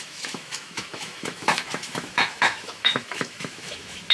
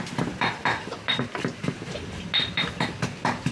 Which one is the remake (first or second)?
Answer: first